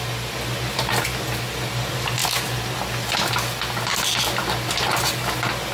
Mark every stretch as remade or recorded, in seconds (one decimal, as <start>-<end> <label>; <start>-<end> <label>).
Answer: 0.0-5.7 recorded